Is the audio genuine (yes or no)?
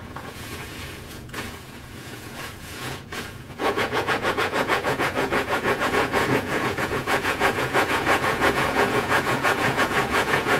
no